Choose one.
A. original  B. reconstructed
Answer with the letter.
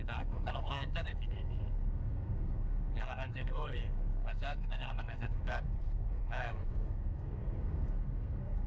B